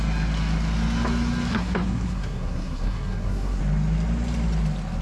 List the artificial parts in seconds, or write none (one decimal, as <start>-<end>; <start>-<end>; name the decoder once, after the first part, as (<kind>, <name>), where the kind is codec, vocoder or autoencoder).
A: 1.5-3.6 (codec, SNAC)